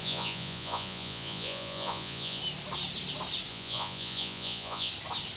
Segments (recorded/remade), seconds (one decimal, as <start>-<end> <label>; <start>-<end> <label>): 0.0-2.4 remade; 2.4-3.5 recorded; 3.5-4.9 remade; 4.9-5.4 recorded